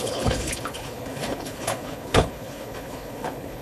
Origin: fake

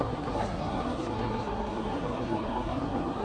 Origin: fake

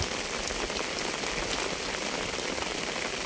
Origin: real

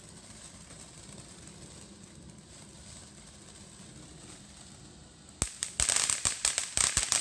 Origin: real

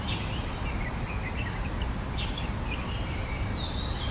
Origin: real